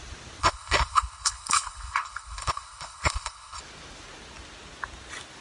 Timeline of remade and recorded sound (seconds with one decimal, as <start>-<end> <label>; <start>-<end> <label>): 0.0-0.4 recorded; 0.4-3.6 remade; 3.6-5.4 recorded